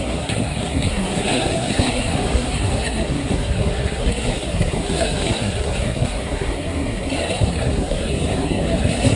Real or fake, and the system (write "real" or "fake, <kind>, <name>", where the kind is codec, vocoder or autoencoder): fake, codec, SNAC